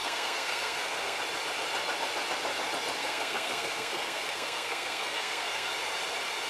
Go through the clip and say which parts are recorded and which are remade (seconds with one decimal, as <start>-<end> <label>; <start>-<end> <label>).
0.0-1.2 remade; 1.2-3.0 recorded; 3.0-5.7 remade; 5.7-6.5 recorded